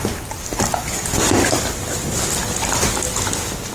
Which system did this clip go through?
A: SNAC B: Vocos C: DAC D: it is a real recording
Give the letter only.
D